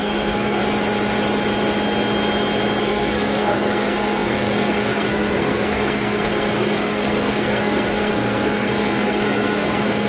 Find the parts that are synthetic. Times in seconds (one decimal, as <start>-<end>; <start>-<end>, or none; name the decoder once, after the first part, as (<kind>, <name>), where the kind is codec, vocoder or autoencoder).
0.0-0.6 (codec, SNAC); 2.8-10.1

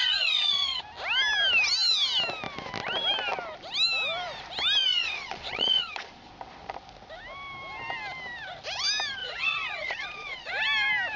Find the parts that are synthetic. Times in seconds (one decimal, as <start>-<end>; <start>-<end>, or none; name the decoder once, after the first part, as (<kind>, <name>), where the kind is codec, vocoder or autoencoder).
0.0-0.8 (vocoder, Vocos); 4.9-6.3; 9.2-10.5

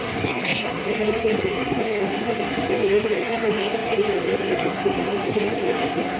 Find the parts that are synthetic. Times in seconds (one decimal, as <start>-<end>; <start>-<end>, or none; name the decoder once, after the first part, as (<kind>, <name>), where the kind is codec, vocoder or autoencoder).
0.0-6.2 (codec, SNAC)

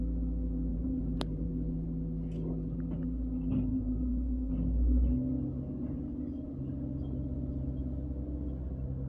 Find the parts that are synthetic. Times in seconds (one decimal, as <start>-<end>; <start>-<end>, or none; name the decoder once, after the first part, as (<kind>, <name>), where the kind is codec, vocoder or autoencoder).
0.7-1.5 (vocoder, BigVGAN v2); 3.7-4.5

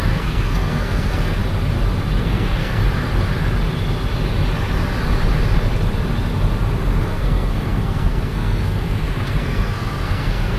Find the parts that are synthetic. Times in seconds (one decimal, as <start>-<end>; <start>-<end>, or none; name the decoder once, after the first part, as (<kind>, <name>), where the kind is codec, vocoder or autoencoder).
0.0-1.4 (codec, SNAC); 2.2-2.8; 7.0-10.6

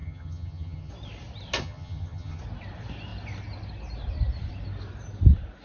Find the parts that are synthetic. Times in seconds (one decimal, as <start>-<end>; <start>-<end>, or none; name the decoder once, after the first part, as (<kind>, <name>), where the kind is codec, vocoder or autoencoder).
0.0-0.9 (vocoder, HiFi-GAN); 1.6-2.4